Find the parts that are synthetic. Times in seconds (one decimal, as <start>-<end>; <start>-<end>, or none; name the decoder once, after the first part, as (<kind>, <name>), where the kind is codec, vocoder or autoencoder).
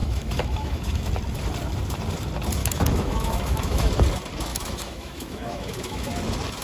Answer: 0.0-1.1 (autoencoder, DAC-VAE); 2.6-3.9; 4.5-6.1